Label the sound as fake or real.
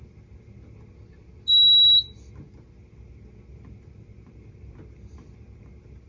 real